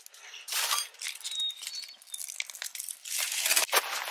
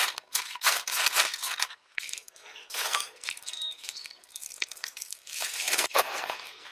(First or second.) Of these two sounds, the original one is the first